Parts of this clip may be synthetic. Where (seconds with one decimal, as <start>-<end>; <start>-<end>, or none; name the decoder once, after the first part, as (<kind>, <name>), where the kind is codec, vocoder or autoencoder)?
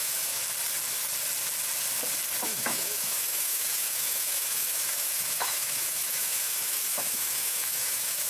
0.0-0.4 (autoencoder, DAC-VAE); 2.4-8.3